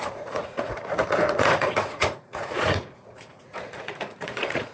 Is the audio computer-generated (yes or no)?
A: yes